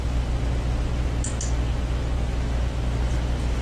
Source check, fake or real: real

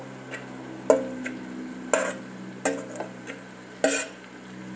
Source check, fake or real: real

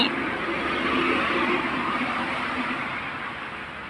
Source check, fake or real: real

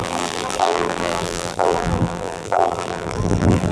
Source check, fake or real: fake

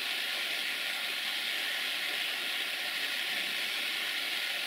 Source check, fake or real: real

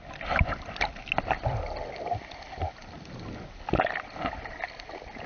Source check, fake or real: real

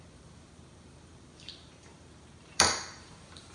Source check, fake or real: fake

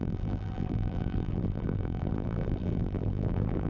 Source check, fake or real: fake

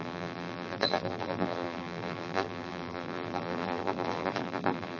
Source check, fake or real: fake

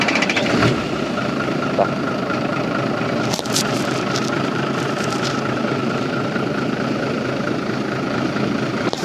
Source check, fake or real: fake